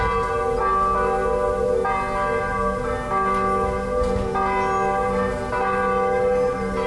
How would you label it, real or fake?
real